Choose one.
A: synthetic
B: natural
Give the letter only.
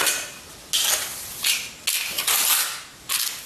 B